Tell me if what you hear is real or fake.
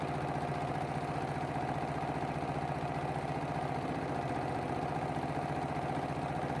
real